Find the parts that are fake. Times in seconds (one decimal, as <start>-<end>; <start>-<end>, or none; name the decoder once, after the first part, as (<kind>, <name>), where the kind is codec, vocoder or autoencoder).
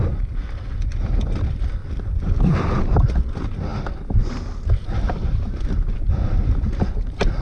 1.8-2.8 (vocoder, BigVGAN v2)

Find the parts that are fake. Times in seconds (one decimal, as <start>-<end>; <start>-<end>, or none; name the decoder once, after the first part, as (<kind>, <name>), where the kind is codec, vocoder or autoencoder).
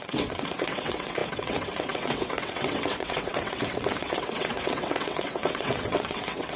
0.0-6.6 (vocoder, WaveNeXt)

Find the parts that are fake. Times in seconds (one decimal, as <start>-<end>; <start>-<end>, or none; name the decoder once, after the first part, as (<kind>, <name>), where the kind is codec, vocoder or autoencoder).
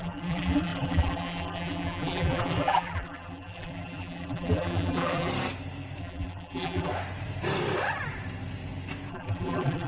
0.0-5.3 (vocoder, BigVGAN v2); 6.0-6.9; 9.1-9.9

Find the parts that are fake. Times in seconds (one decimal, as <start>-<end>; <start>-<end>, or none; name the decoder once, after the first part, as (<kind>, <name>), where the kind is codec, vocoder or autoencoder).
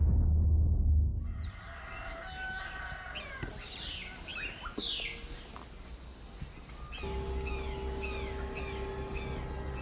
none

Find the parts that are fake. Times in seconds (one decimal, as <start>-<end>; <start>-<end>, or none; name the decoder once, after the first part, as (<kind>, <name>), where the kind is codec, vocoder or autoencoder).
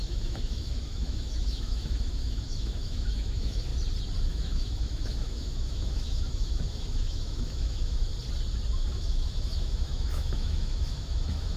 0.0-3.7 (autoencoder, DAC-VAE); 4.3-8.1; 8.9-11.6